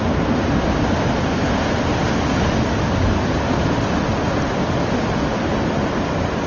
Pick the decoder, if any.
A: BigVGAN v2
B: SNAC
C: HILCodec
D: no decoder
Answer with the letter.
D